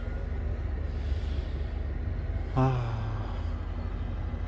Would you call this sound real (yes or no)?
yes